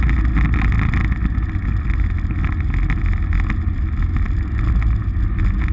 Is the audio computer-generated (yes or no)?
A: no